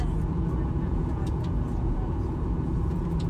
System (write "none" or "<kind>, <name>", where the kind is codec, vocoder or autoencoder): vocoder, Vocos